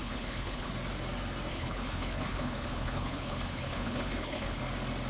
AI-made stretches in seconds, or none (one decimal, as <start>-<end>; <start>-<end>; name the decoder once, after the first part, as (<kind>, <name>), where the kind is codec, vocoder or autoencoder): 0.0-0.7 (codec, HILCodec); 1.5-4.6